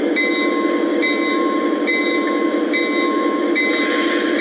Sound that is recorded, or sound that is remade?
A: recorded